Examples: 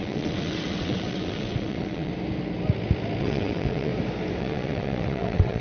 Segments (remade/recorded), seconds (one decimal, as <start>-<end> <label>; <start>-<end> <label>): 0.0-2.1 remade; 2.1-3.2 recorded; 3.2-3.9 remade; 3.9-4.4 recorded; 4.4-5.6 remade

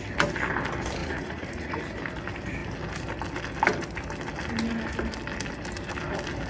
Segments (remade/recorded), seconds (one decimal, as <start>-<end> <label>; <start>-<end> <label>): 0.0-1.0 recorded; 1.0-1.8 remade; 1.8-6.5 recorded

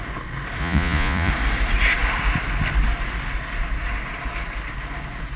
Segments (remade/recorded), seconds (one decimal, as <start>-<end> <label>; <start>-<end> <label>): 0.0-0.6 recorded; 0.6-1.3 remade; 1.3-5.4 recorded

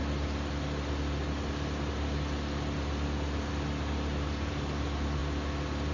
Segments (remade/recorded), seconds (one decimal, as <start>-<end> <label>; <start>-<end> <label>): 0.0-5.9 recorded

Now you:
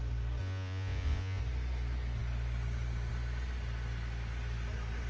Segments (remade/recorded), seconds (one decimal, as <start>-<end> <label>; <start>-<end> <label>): 0.0-0.4 recorded; 0.4-1.4 remade; 1.4-5.1 recorded

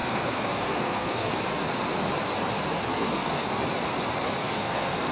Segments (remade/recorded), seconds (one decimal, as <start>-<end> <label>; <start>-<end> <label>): 0.0-1.3 remade; 1.3-2.9 recorded; 2.9-3.6 remade; 3.6-4.4 recorded; 4.4-5.1 remade

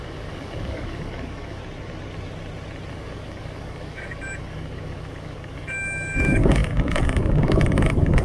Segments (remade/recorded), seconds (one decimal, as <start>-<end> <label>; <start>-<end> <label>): 0.0-1.6 remade; 1.6-2.9 recorded; 2.9-8.2 remade

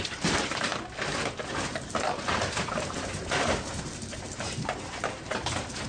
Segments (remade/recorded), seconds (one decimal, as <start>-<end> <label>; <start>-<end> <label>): 0.0-0.7 remade; 0.7-1.5 recorded; 1.5-5.9 remade